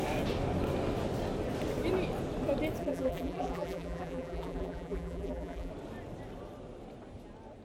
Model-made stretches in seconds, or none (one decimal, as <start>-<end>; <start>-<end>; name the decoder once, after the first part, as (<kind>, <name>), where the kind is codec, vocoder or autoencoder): 2.8-5.7 (vocoder, BigVGAN v2)